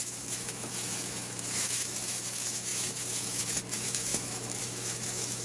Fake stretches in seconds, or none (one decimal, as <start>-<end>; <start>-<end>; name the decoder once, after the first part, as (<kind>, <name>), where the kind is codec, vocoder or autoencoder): 0.0-5.4 (autoencoder, DAC-VAE)